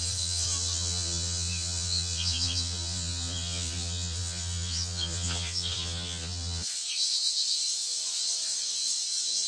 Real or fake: fake